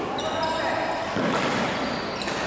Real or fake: real